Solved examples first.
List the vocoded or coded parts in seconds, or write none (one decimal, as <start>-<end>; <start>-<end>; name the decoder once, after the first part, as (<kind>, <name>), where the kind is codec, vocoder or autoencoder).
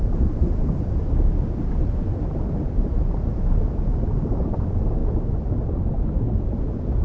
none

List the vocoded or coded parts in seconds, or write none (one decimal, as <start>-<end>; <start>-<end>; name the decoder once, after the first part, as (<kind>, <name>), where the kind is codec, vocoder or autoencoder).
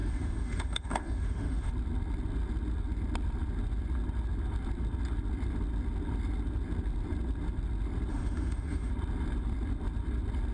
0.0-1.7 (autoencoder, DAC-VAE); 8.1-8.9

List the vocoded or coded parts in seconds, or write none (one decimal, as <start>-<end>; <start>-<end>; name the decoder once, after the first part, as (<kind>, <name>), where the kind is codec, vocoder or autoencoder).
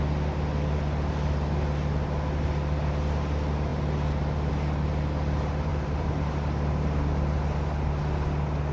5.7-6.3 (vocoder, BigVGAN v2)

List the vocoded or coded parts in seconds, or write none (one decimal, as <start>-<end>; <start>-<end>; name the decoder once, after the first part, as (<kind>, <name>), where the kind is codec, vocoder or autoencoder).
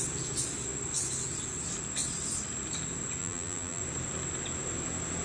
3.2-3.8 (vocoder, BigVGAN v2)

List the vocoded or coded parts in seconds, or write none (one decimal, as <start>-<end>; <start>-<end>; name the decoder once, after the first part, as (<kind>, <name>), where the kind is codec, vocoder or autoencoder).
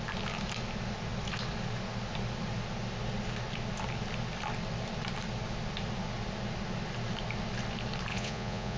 8.1-8.8 (vocoder, Vocos)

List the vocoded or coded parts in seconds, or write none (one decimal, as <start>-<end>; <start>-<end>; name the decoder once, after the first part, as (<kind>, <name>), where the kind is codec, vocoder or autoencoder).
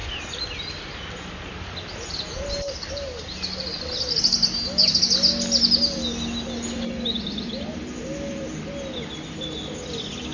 none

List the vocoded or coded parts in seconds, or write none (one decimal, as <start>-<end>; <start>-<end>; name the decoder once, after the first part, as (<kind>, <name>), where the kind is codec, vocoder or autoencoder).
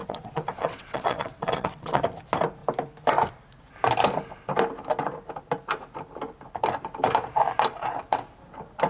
0.0-2.0 (vocoder, WaveNeXt)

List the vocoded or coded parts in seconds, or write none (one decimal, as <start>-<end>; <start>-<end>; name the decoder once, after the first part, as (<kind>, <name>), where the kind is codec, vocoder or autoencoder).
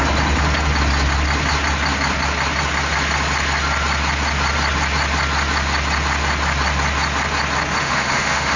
7.8-8.6 (autoencoder, DAC-VAE)